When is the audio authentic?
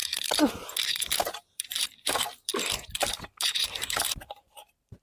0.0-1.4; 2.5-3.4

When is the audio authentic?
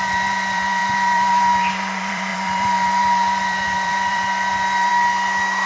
4.9-5.7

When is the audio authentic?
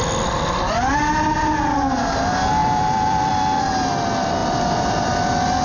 0.0-2.6; 3.3-4.4; 5.1-5.6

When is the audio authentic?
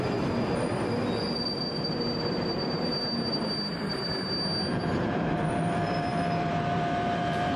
1.2-1.9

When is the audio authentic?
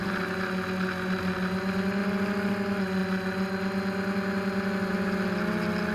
0.0-5.9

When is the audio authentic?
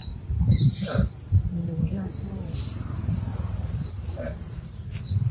3.3-3.9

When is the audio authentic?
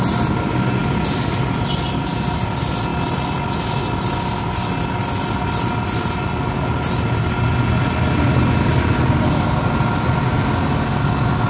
0.0-0.8; 2.1-2.9; 4.2-7.8; 9.1-11.5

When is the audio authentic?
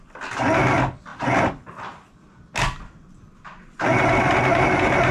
0.0-5.1